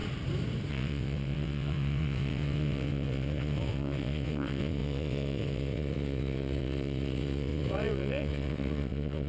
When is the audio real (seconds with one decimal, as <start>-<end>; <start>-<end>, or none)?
0.0-0.7